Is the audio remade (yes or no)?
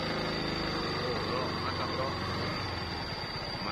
no